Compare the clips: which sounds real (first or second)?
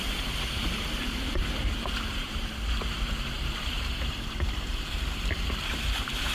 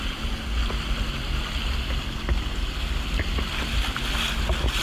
second